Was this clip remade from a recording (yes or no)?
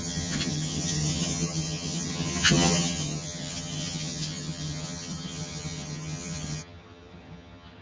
yes